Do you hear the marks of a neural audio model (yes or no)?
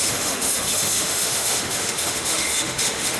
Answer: yes